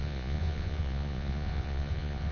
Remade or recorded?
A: remade